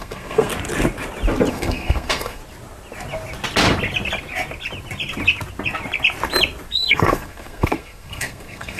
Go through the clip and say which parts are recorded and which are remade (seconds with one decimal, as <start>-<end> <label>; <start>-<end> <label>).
0.0-0.5 remade; 0.5-1.5 recorded; 1.5-2.4 remade; 2.4-6.7 recorded; 6.7-8.8 remade